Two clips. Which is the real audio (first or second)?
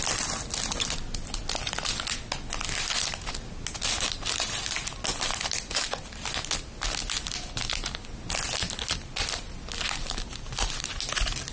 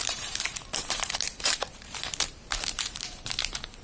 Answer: first